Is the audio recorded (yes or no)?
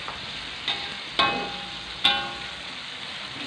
yes